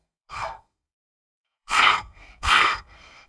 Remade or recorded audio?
remade